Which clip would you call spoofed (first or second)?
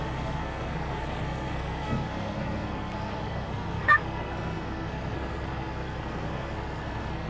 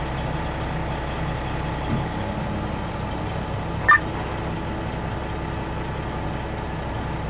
first